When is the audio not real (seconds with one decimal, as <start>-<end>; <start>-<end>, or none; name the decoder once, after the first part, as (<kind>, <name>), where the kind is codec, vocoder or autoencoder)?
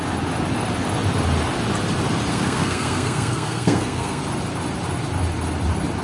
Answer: 2.3-4.2 (codec, SNAC)